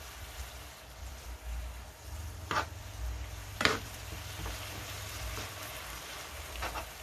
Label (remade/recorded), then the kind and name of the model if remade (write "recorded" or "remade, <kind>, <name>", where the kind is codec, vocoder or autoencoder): remade, vocoder, BigVGAN v2